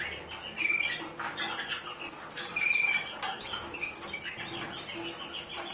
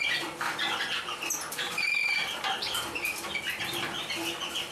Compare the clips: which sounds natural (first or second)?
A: first